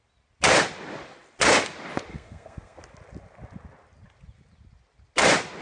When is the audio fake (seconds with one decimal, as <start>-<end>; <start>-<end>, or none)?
2.1-2.8